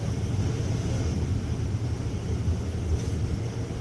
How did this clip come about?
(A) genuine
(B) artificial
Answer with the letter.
A